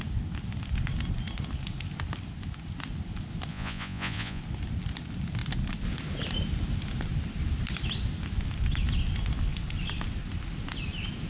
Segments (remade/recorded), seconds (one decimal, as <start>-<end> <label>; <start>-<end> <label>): 0.0-3.5 recorded; 3.5-4.4 remade; 4.4-11.3 recorded